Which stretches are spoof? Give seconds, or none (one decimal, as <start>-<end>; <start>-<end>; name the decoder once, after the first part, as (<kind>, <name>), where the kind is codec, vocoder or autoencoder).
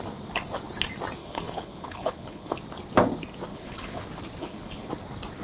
1.2-2.6 (codec, HILCodec); 3.5-4.0; 4.4-4.9